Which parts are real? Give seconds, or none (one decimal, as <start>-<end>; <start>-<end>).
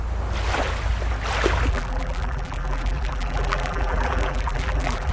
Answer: 0.0-1.7